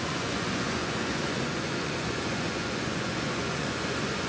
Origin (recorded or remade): remade